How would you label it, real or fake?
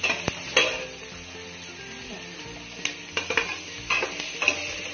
real